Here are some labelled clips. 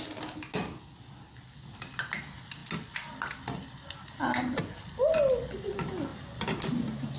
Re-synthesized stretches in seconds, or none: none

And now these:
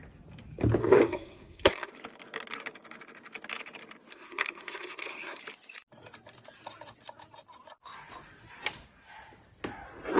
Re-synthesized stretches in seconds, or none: 0.8-1.9 (codec, SNAC); 4.1-5.4

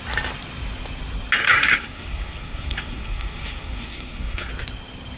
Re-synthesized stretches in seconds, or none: 1.4-4.5 (codec, SNAC)

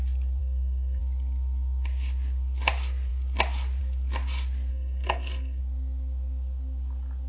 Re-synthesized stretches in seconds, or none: 0.4-1.0 (codec, SNAC); 4.7-5.6

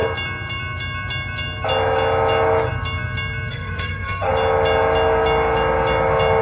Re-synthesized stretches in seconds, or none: 3.5-4.3 (codec, SNAC)

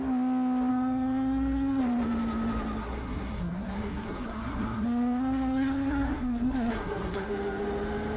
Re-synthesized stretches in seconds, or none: 0.7-1.8 (codec, SNAC); 2.8-7.3

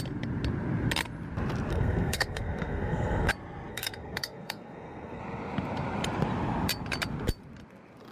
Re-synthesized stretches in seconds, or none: 1.7-3.3 (codec, SNAC); 3.7-5.2

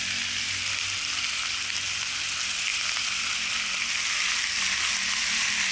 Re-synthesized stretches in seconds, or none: none